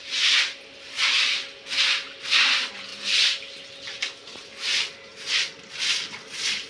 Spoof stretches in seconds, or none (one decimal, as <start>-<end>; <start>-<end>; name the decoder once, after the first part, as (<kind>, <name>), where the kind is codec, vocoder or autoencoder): none